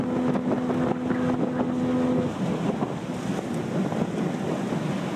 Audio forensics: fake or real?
real